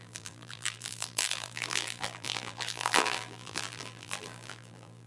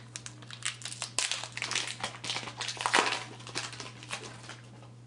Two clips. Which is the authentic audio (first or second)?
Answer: second